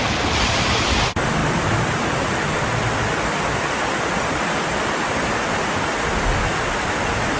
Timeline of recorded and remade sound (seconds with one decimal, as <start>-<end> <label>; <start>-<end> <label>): 0.0-7.4 recorded